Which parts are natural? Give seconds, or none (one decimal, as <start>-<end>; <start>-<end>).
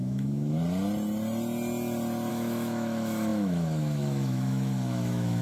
0.6-2.3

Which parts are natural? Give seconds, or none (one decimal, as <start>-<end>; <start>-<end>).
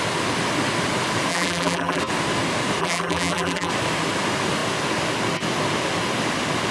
0.0-1.3; 2.0-2.8; 3.7-6.7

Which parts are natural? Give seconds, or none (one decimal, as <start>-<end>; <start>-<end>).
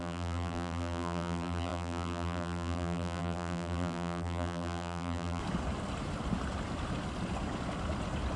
5.4-8.4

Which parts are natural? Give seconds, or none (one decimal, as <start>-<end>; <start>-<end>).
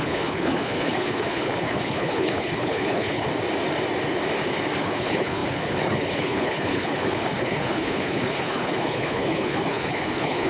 3.3-4.8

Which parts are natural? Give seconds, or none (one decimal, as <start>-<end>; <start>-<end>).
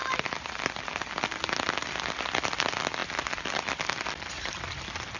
0.0-5.2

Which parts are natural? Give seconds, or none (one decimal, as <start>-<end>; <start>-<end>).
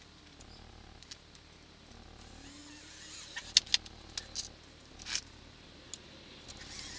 0.0-7.0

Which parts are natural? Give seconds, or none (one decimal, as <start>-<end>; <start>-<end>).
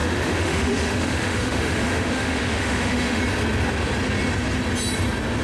3.2-5.4